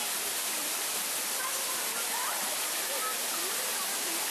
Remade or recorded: recorded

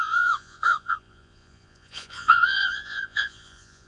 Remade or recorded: remade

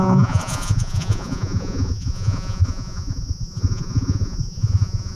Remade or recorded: remade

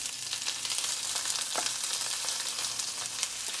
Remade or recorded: recorded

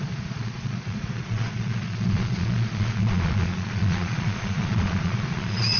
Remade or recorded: remade